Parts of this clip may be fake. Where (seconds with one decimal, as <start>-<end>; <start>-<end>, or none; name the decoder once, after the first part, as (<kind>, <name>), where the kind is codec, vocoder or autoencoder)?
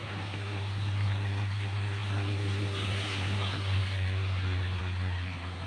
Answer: 0.0-5.7 (codec, SNAC)